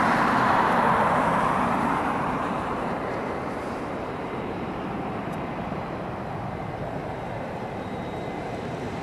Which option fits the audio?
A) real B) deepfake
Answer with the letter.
B